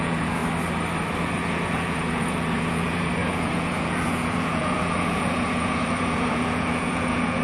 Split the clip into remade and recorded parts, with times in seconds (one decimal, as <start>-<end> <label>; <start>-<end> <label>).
0.0-0.4 remade; 0.4-1.2 recorded; 1.2-7.4 remade